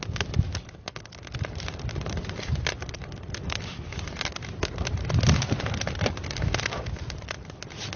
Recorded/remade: recorded